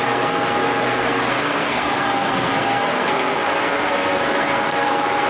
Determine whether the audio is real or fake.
fake